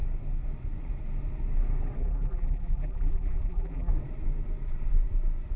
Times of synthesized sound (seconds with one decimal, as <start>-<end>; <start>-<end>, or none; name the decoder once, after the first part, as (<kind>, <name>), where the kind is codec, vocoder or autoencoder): 2.0-3.9 (vocoder, BigVGAN v2)